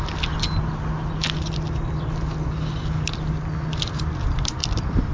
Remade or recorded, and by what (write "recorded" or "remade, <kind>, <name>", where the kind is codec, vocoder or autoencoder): recorded